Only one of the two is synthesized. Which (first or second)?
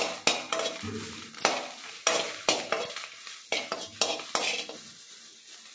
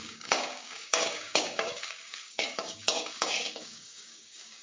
second